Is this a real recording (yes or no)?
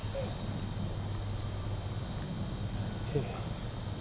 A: yes